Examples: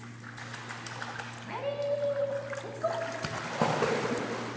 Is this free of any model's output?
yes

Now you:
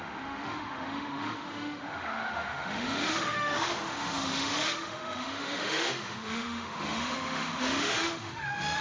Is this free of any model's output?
no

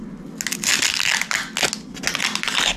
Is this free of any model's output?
yes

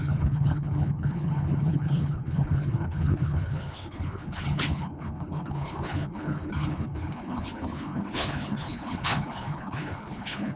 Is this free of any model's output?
no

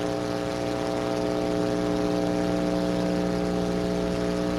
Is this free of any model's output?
yes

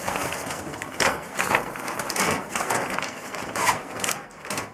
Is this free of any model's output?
no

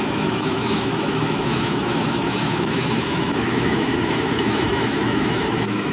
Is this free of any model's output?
no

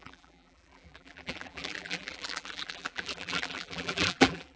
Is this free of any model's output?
no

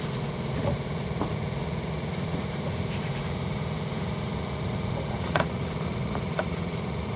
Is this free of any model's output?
no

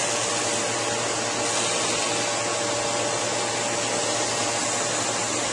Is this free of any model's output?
yes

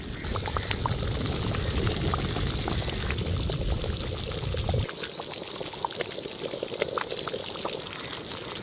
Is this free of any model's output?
yes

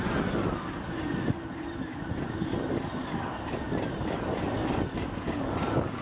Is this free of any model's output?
yes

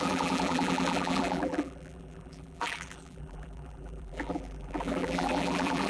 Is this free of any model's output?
no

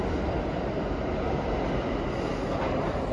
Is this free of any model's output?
yes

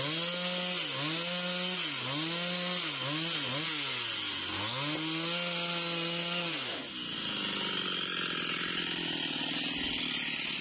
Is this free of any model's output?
yes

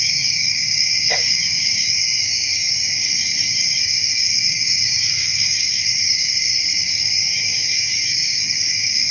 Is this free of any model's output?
no